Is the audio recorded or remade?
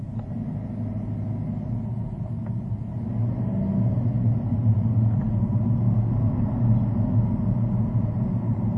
recorded